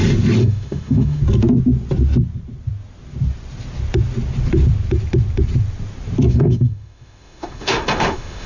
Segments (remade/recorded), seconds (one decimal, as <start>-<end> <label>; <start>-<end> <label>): 0.0-0.4 recorded; 0.4-1.2 remade; 1.2-6.3 recorded; 6.3-8.5 remade